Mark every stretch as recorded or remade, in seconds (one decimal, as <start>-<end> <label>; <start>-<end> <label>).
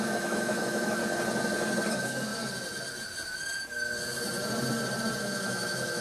0.0-1.0 remade; 1.0-1.9 recorded; 1.9-2.3 remade; 2.3-5.2 recorded; 5.2-6.0 remade